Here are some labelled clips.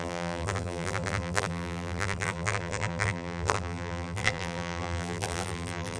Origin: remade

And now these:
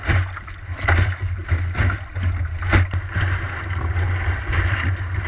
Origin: recorded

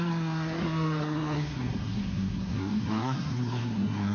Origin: remade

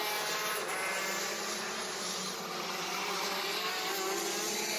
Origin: recorded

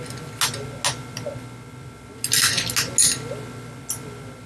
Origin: recorded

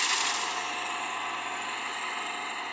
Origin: recorded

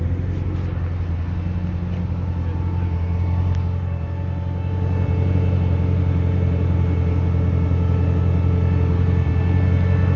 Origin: recorded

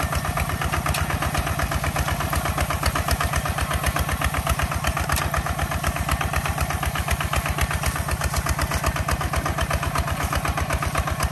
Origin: recorded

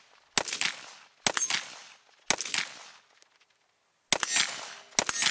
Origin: recorded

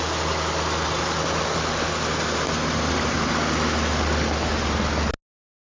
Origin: recorded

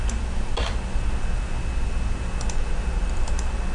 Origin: recorded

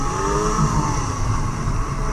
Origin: remade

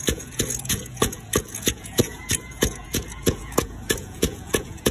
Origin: remade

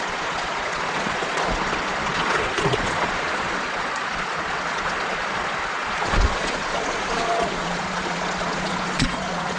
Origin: remade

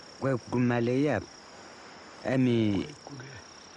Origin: recorded